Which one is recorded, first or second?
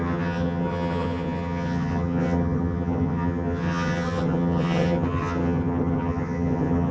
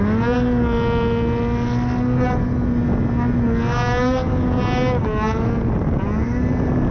second